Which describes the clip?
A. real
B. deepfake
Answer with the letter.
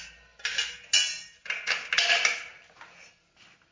A